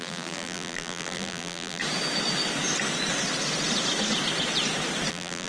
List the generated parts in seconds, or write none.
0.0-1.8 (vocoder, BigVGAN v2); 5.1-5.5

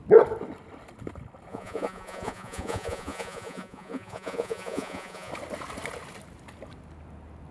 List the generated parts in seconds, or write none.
1.5-5.3 (vocoder, Vocos)